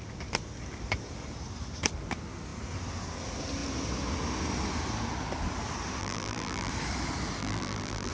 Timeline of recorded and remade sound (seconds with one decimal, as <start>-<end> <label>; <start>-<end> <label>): 0.0-6.0 recorded; 6.0-6.7 remade; 6.7-7.4 recorded; 7.4-8.1 remade